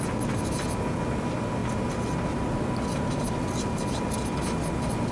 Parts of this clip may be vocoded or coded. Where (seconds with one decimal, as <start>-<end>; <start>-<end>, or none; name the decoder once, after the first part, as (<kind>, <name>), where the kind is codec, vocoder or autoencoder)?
none